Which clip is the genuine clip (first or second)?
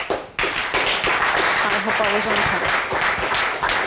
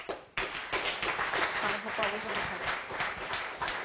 first